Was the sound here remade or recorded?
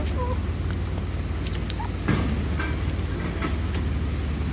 recorded